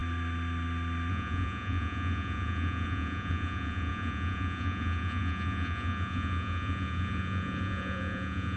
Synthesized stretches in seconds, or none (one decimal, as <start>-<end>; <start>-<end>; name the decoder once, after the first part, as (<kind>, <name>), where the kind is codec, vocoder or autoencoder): 1.1-8.6 (vocoder, Vocos)